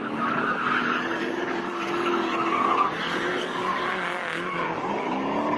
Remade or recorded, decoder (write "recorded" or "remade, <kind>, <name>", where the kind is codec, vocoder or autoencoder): remade, codec, DAC